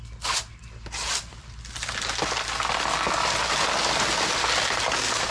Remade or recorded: recorded